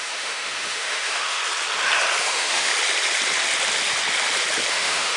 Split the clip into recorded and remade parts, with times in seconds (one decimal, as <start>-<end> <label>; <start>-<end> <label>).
0.0-1.4 remade; 1.4-2.2 recorded; 2.2-2.7 remade; 2.7-4.7 recorded; 4.7-5.2 remade